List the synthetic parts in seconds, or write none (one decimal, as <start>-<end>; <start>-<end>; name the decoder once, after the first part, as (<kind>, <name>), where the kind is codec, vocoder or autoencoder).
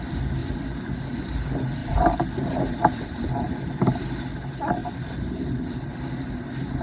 0.4-1.1 (vocoder, BigVGAN v2); 1.8-3.7; 4.8-6.0